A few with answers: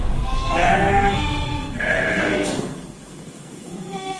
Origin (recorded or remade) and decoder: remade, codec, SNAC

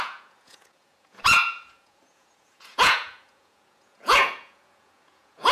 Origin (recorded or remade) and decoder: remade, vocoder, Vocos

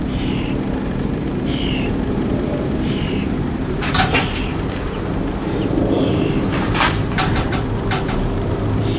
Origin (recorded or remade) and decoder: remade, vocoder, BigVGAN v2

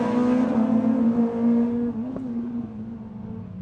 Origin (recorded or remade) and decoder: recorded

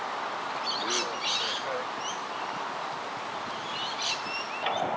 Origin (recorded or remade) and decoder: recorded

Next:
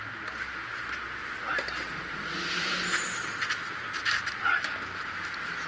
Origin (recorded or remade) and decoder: recorded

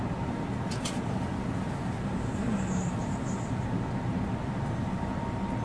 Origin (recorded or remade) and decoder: recorded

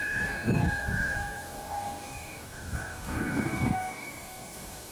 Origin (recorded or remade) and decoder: remade, codec, DAC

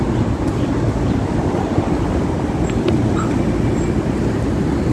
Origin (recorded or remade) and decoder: recorded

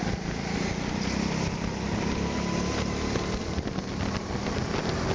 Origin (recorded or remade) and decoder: recorded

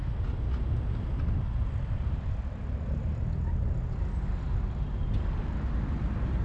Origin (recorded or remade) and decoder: recorded